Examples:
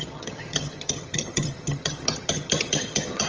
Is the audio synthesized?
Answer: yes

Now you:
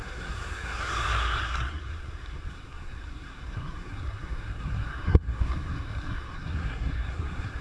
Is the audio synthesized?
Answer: yes